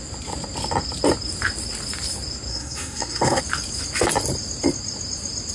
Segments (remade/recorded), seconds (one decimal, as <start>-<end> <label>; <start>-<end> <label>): 0.0-2.5 recorded; 2.5-3.4 remade; 3.4-5.5 recorded